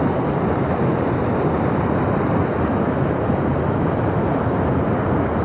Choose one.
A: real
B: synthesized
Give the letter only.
A